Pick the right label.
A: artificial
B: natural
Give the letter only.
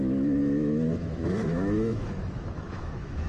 A